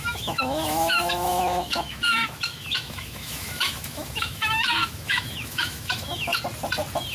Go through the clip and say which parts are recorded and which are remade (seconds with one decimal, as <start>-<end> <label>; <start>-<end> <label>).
0.0-6.3 remade; 6.3-7.1 recorded